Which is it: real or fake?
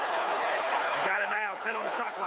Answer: fake